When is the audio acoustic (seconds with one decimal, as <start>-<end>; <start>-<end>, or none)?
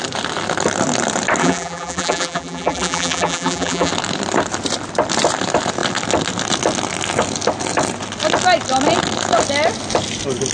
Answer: 0.0-1.4; 3.9-10.5